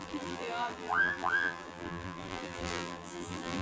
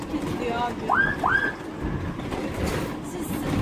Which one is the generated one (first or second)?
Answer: first